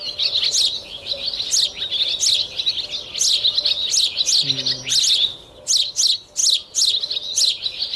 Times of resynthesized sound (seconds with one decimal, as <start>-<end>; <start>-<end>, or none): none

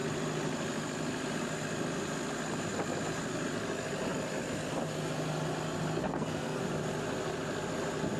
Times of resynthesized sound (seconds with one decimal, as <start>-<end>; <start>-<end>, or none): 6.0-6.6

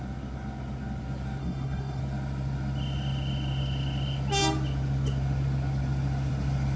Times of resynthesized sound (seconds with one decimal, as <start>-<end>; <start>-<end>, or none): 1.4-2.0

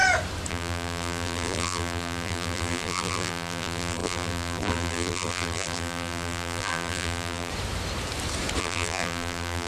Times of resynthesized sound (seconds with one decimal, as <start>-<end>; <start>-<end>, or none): 0.5-7.5; 8.6-9.7

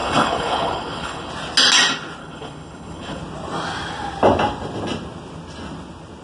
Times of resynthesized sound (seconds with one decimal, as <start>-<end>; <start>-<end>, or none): 0.0-1.3; 2.2-3.2

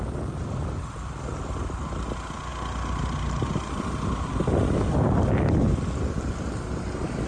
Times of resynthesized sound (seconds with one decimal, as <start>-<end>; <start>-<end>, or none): none